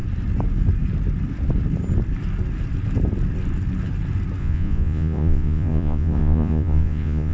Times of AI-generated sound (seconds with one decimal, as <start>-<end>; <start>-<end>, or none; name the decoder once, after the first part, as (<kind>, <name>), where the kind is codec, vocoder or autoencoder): 4.4-7.3 (vocoder, Vocos)